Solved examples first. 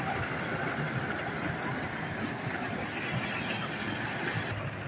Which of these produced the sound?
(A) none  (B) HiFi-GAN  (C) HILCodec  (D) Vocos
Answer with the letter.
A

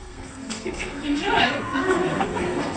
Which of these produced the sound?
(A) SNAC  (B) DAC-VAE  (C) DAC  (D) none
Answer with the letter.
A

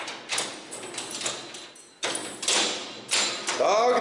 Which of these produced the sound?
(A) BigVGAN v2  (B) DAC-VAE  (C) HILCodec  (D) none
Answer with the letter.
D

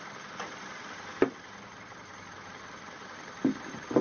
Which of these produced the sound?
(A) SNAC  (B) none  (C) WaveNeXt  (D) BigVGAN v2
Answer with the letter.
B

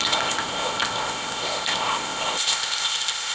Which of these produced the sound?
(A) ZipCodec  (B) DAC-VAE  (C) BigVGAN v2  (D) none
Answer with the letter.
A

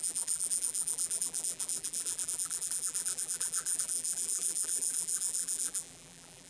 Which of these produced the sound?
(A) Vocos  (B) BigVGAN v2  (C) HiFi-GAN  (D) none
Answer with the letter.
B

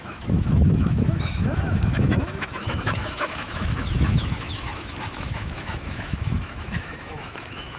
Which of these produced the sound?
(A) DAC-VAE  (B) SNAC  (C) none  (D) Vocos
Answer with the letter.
A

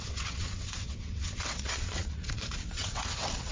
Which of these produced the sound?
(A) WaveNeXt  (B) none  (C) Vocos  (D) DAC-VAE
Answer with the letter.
A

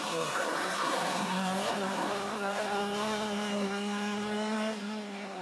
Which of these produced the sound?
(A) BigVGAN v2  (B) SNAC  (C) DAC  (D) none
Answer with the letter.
B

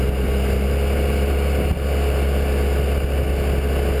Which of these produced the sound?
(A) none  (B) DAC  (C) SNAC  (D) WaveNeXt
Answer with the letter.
A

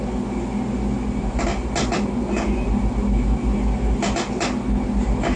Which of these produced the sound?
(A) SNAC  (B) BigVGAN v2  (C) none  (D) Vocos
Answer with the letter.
C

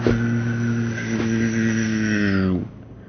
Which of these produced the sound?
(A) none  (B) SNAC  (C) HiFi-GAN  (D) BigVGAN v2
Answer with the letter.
A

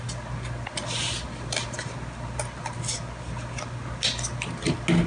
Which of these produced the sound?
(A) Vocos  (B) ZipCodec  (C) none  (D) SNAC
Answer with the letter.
C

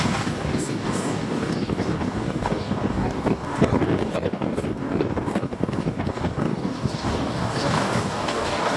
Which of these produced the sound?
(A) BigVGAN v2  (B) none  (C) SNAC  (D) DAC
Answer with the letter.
D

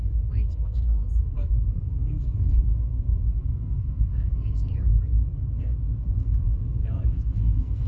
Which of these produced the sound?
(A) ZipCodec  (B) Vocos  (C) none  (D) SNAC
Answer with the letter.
D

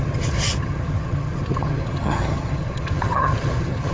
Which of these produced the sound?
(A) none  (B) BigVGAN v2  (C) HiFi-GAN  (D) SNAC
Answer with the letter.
C